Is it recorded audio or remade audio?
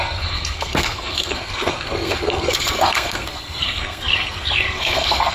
remade